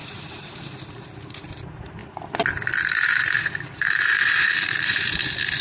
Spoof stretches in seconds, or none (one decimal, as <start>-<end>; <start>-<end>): 0.0-2.0; 3.2-5.6